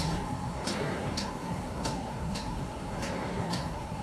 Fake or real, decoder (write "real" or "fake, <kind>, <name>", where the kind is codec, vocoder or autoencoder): fake, codec, SNAC